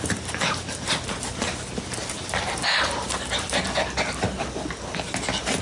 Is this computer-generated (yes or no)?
no